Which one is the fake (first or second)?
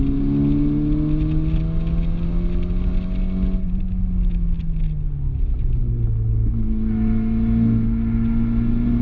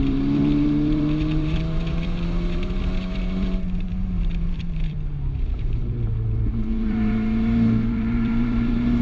second